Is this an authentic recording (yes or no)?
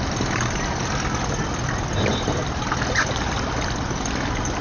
yes